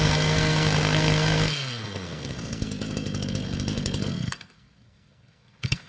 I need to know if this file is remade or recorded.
remade